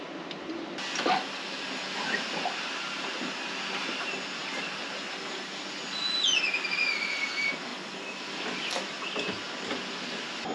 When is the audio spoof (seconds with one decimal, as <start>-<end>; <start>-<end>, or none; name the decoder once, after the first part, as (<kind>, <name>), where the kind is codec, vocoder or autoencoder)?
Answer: none